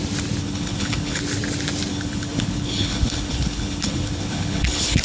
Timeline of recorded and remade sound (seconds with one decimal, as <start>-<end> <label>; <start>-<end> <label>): 0.0-0.4 recorded; 0.4-1.2 remade; 1.2-1.9 recorded; 1.9-5.0 remade